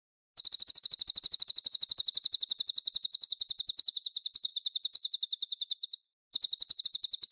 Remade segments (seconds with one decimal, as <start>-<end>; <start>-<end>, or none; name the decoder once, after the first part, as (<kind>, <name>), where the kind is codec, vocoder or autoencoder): none